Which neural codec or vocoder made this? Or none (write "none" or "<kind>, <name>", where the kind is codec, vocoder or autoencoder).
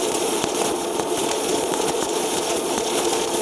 vocoder, Vocos